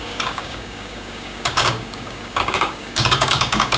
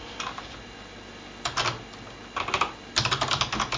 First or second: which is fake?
first